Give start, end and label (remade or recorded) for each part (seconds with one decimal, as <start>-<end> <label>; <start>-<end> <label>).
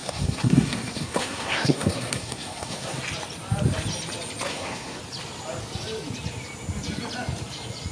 0.0-3.0 remade; 3.0-4.5 recorded; 4.5-5.0 remade; 5.0-7.9 recorded